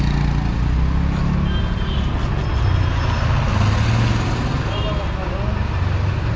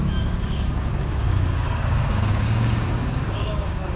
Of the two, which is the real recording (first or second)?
first